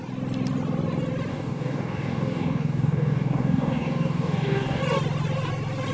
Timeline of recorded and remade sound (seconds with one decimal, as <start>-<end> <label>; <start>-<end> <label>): 0.0-1.3 recorded; 1.3-4.8 remade; 4.8-5.9 recorded